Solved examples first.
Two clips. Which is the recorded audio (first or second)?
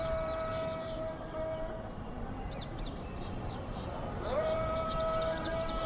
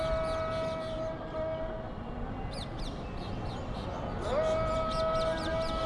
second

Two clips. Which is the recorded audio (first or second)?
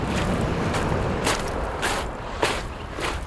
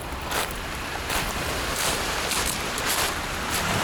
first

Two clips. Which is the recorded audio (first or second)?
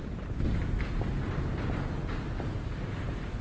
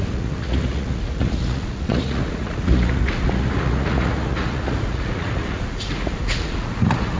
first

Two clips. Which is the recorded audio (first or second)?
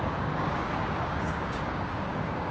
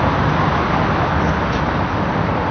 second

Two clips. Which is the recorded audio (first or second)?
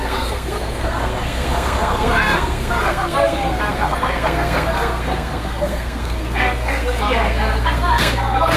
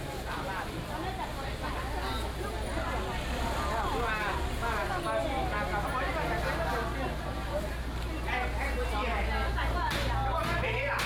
second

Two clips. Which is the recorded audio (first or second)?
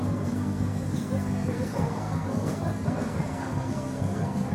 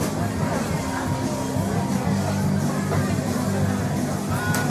second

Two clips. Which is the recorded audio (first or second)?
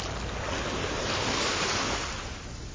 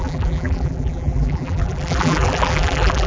first